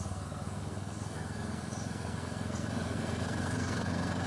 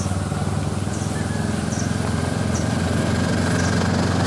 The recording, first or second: second